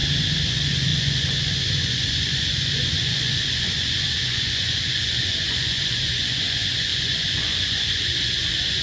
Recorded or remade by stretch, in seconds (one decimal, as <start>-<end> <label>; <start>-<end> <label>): 0.0-0.5 recorded; 0.5-8.8 remade